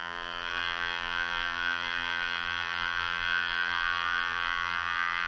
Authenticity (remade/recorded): remade